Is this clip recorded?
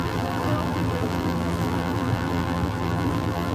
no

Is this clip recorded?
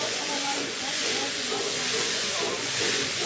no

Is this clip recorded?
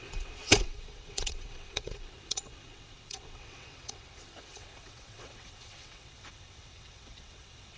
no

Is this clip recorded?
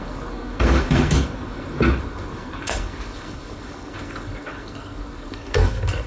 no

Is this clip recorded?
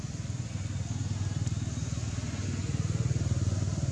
yes